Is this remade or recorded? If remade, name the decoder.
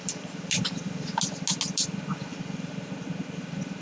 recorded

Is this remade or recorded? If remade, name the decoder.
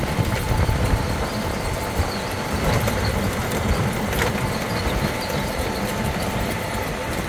recorded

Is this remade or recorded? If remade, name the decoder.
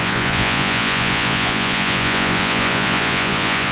remade, vocoder, Vocos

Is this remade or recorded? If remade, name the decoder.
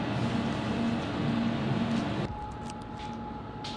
recorded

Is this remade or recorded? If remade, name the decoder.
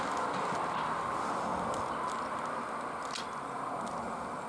recorded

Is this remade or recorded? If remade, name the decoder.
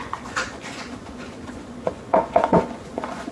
remade, vocoder, Vocos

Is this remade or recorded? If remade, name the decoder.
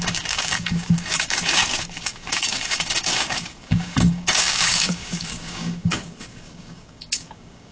remade, codec, DAC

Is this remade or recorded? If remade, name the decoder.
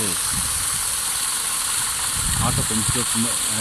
recorded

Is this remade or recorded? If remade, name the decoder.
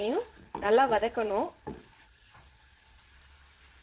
remade, vocoder, Vocos